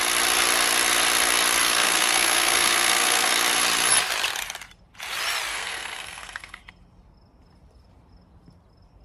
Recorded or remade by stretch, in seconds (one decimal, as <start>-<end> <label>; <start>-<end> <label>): 0.0-1.6 recorded; 1.6-3.3 remade; 3.3-5.5 recorded; 5.5-6.6 remade; 6.6-9.0 recorded